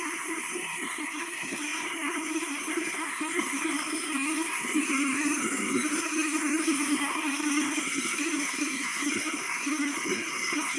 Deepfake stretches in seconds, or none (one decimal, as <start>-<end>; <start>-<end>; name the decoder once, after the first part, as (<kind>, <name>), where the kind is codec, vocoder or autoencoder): 0.0-10.8 (codec, SNAC)